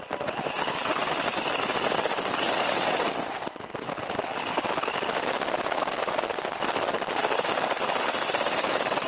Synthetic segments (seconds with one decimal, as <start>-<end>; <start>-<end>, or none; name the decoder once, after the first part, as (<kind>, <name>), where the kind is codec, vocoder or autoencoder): none